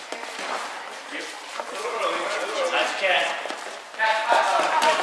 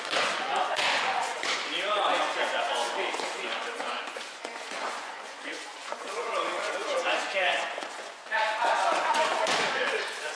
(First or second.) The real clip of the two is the first